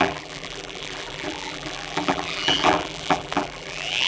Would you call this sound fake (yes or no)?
yes